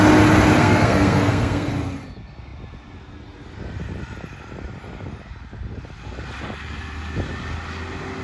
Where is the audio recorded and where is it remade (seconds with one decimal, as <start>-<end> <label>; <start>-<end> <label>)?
0.0-0.6 recorded; 0.6-1.7 remade; 1.7-8.2 recorded